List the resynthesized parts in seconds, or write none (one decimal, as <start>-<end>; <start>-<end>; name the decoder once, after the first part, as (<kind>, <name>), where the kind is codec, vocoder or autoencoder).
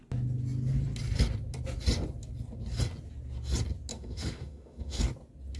3.9-5.0 (autoencoder, DAC-VAE)